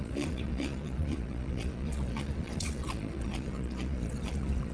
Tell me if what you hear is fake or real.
fake